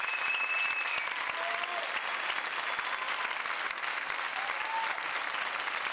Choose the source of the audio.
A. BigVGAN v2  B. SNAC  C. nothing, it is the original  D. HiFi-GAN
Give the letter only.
C